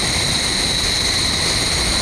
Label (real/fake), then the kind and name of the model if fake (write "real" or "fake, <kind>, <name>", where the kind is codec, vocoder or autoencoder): real